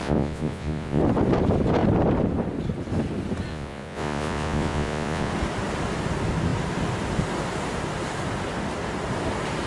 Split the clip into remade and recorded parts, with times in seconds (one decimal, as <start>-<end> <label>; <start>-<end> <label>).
0.0-1.0 remade; 1.0-3.5 recorded; 3.5-5.3 remade; 5.3-9.7 recorded